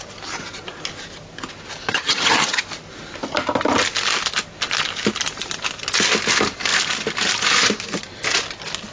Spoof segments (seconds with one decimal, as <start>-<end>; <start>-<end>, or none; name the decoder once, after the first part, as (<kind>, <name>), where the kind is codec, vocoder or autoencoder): 1.9-2.6 (vocoder, HiFi-GAN)